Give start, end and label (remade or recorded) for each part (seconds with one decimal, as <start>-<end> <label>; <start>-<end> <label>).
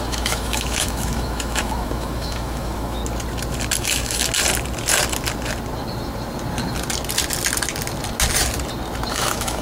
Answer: 0.0-3.0 remade; 3.0-3.8 recorded; 3.8-4.2 remade; 4.2-9.1 recorded; 9.1-9.6 remade